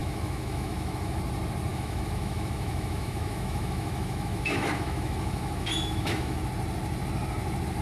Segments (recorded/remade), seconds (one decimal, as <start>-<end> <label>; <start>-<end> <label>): 0.0-1.2 remade; 1.2-1.7 recorded; 1.7-6.4 remade; 6.4-7.8 recorded

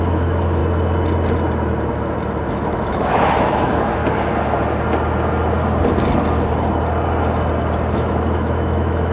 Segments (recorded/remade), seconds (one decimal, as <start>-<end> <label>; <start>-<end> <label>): 0.0-0.6 remade; 0.6-2.5 recorded; 2.5-4.0 remade; 4.0-7.9 recorded; 7.9-9.1 remade

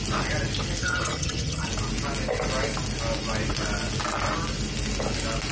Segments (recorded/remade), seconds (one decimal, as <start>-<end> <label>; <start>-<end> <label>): 0.0-0.8 recorded; 0.8-1.7 remade; 1.7-5.5 recorded

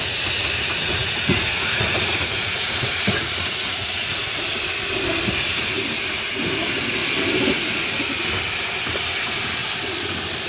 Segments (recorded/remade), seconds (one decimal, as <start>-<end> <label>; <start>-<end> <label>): 0.0-0.8 recorded; 0.8-4.4 remade; 4.4-10.5 recorded

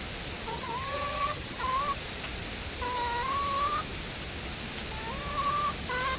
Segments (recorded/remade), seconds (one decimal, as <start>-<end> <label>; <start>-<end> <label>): 0.0-0.5 recorded; 0.5-1.6 remade; 1.6-6.2 recorded